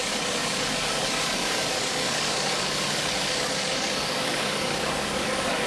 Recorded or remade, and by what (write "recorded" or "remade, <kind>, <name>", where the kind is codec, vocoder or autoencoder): remade, codec, DAC